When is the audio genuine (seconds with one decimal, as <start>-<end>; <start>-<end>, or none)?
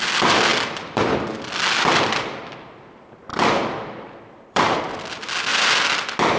0.0-0.5; 2.1-3.3; 4.8-6.4